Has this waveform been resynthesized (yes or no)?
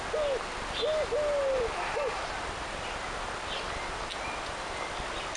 no